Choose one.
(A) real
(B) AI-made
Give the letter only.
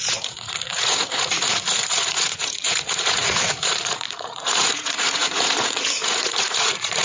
B